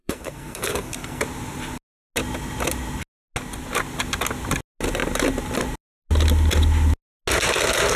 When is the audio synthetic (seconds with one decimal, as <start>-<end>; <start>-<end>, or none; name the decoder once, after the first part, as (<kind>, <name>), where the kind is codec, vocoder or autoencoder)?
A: 0.0-1.2 (codec, SNAC)